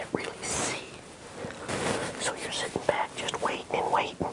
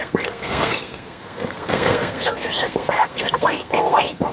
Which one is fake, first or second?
second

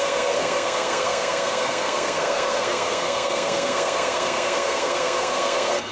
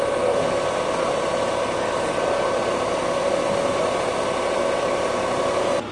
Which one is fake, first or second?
first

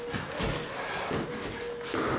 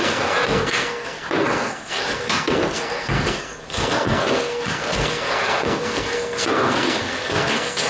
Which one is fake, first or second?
second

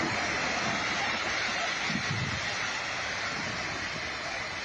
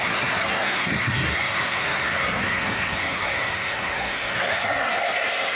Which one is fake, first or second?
second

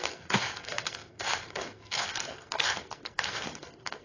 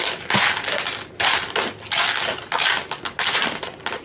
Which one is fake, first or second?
first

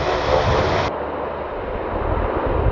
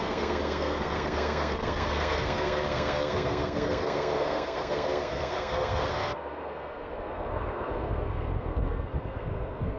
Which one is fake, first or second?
second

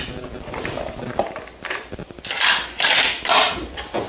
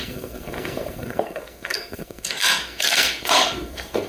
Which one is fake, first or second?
second